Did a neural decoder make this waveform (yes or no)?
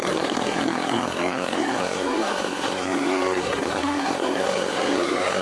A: yes